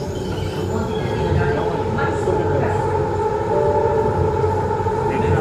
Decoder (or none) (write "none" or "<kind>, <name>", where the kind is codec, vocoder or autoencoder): none